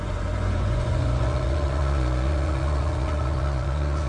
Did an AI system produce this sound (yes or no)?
yes